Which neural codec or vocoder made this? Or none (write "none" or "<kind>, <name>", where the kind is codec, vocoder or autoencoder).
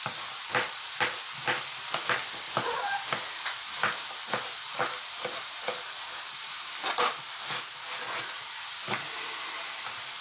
none